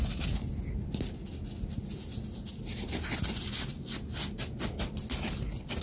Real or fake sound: real